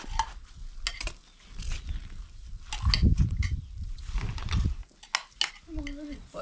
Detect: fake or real real